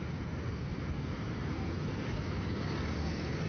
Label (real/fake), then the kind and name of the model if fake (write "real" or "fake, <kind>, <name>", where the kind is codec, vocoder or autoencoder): real